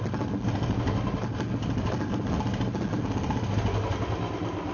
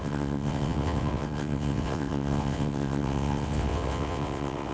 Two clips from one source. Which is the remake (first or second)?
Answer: second